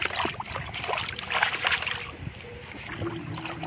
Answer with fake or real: real